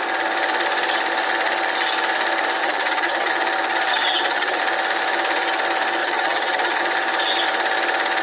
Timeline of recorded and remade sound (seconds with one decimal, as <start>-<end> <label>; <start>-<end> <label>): 0.0-2.6 recorded; 2.6-3.3 remade; 3.3-3.9 recorded; 3.9-4.6 remade; 4.6-6.0 recorded; 6.0-6.8 remade; 6.8-8.2 recorded